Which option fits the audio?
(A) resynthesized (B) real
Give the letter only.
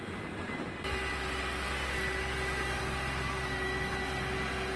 B